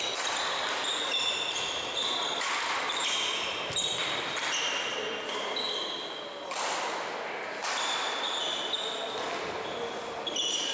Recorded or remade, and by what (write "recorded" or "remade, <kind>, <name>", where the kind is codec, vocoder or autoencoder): recorded